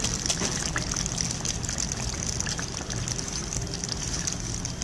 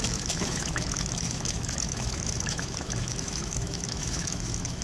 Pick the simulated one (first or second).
second